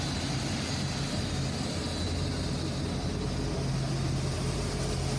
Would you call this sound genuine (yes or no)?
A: yes